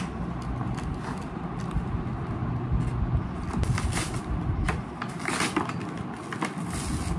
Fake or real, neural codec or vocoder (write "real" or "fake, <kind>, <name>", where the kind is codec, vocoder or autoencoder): real